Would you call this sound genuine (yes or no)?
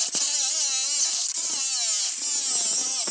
yes